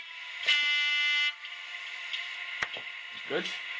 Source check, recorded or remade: remade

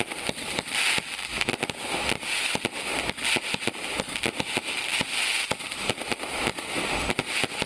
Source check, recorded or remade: recorded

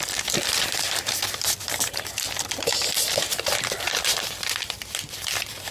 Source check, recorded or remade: remade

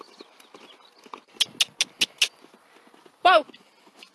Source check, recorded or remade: recorded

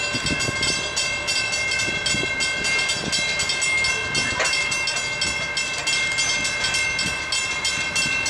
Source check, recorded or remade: recorded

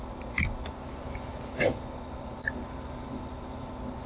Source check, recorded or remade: remade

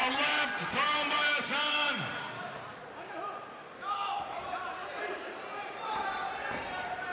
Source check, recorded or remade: remade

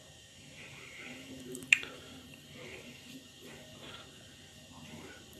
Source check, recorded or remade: remade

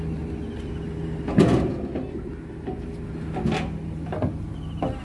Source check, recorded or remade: recorded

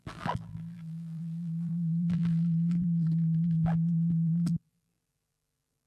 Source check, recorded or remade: remade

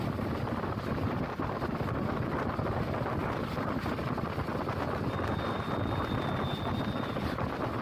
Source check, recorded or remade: recorded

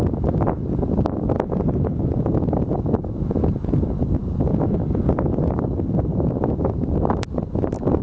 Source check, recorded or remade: recorded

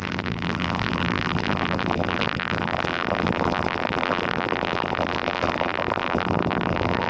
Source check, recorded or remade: remade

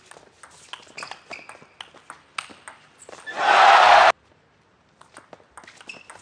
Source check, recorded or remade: recorded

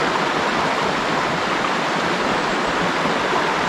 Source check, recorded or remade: recorded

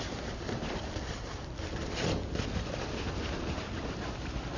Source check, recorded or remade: remade